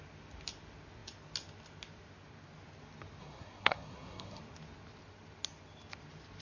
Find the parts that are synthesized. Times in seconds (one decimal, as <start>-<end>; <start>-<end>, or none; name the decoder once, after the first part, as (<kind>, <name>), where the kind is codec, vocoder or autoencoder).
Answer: 3.2-4.4 (codec, SNAC)